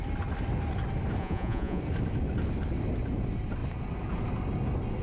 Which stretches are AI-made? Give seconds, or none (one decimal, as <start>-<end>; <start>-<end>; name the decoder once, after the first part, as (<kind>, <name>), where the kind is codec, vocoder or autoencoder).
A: 1.2-1.8 (vocoder, Vocos)